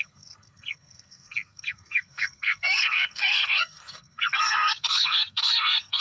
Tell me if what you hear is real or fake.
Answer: fake